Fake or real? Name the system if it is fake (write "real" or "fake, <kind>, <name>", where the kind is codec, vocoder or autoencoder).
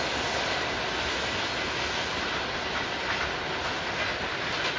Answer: real